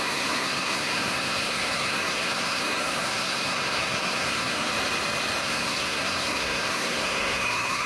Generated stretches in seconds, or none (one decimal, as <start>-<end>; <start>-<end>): 0.0-4.7; 5.4-7.9